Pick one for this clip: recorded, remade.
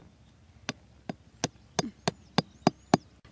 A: recorded